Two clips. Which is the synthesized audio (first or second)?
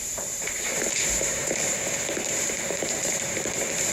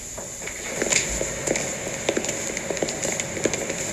first